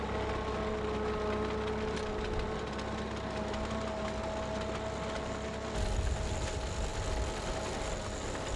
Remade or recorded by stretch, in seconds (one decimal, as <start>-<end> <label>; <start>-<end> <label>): 0.0-8.6 recorded